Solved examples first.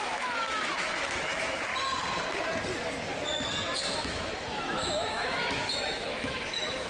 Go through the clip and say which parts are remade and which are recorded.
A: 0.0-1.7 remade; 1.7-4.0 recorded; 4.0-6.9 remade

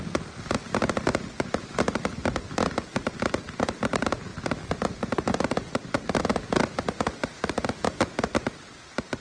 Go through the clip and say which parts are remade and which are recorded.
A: 0.0-9.2 recorded

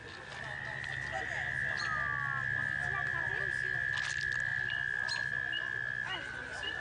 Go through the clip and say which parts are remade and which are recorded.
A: 0.0-4.5 recorded; 4.5-5.3 remade; 5.3-6.8 recorded